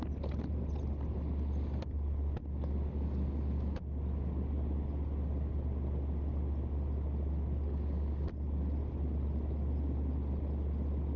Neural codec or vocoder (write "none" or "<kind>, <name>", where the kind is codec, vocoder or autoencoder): none